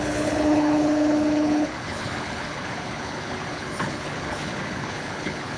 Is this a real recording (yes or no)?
no